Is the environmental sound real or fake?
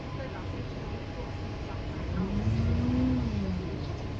real